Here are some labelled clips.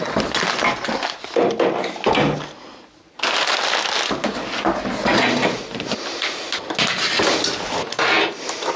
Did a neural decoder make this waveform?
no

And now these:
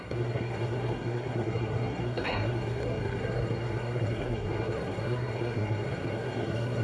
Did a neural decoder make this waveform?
yes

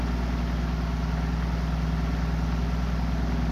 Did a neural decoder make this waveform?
no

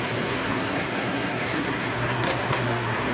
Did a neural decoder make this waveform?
yes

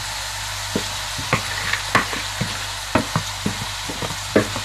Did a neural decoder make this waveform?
no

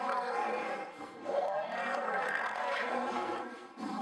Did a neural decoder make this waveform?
yes